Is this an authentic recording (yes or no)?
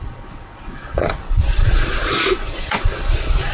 no